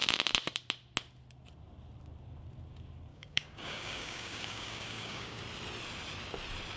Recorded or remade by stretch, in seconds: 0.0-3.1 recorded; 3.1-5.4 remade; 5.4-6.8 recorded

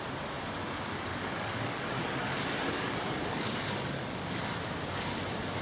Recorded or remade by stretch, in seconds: 0.0-1.1 recorded; 1.1-4.5 remade; 4.5-5.6 recorded

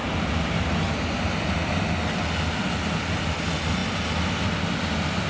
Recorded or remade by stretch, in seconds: 0.0-5.3 recorded

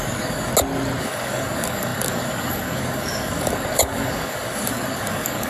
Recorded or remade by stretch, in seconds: 0.0-0.5 remade; 0.5-1.0 recorded; 1.0-5.5 remade

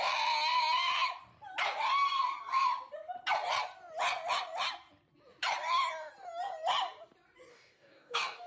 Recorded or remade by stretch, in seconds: 0.0-7.5 recorded; 7.5-8.5 remade

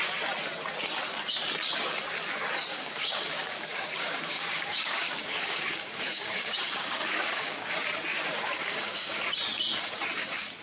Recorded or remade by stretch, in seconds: 0.0-2.7 recorded; 2.7-7.7 remade; 7.7-8.1 recorded; 8.1-9.2 remade; 9.2-10.6 recorded